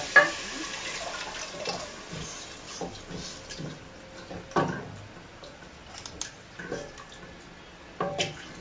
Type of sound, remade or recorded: recorded